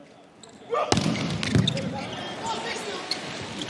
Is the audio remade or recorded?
recorded